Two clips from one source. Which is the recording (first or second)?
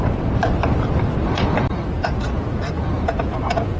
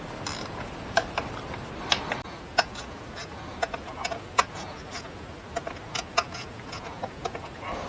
second